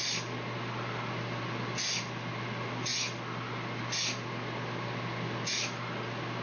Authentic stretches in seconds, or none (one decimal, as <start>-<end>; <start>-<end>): 0.0-6.4

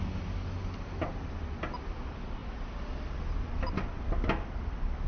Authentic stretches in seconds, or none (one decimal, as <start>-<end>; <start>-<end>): 0.0-5.1